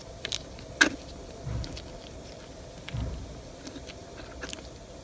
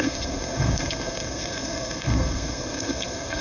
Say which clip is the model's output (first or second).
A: second